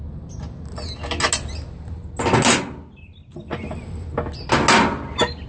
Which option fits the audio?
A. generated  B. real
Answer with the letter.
B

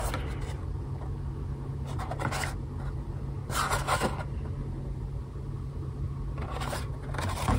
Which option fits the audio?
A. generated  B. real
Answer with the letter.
B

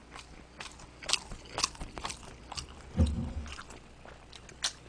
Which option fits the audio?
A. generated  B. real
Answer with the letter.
B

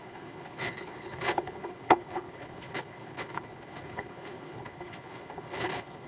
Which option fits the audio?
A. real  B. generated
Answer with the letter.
B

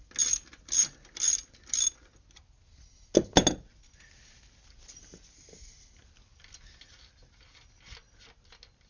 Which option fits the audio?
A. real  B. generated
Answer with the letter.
A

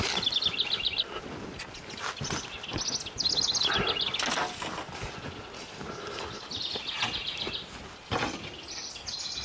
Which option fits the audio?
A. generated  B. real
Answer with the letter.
B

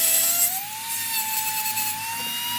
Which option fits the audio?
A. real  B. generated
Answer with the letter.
A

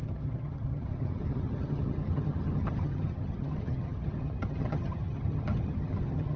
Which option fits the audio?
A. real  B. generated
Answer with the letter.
B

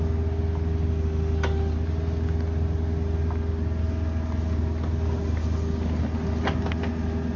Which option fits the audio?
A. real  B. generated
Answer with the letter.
A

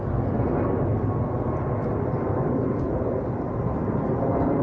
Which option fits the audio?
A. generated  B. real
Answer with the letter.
B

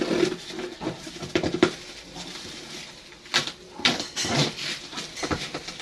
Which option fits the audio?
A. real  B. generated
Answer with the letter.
A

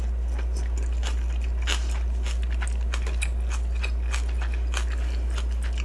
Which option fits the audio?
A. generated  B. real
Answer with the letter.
B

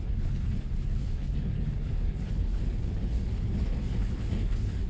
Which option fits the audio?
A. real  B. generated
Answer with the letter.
B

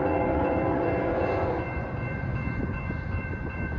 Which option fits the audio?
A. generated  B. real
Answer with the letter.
A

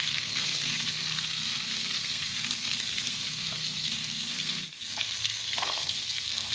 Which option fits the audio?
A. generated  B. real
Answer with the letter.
A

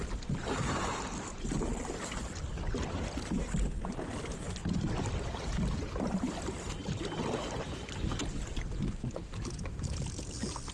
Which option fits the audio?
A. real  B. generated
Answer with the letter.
A